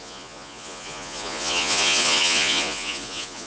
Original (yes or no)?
no